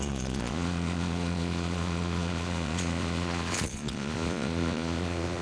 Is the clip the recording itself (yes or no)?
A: no